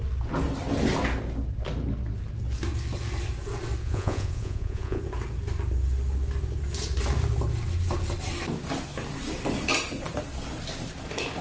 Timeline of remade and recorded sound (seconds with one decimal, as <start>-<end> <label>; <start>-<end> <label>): 0.0-3.8 recorded; 3.8-5.0 remade; 5.0-11.4 recorded